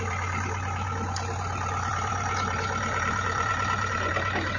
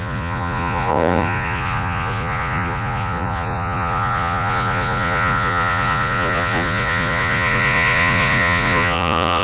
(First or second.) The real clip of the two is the first